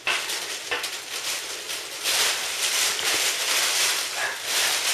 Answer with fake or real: fake